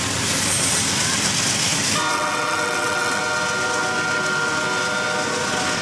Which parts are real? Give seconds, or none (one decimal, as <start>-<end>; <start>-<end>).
0.0-2.1; 3.2-5.8